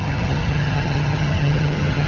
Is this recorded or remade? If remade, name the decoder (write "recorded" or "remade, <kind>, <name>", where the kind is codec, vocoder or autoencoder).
remade, vocoder, HiFi-GAN